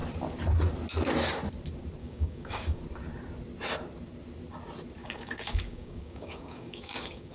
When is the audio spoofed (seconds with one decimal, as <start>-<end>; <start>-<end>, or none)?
2.0-2.8; 5.0-7.3